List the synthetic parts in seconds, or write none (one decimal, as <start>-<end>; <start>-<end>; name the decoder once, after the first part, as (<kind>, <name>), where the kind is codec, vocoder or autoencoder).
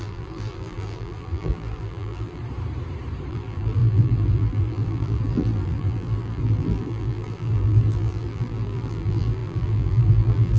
0.0-2.4 (vocoder, BigVGAN v2); 3.3-10.6